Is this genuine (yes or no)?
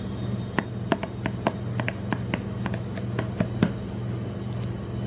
yes